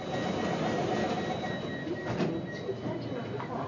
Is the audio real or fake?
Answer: fake